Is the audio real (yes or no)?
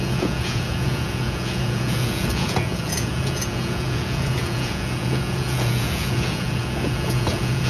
no